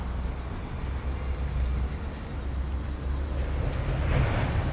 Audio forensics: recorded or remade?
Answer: recorded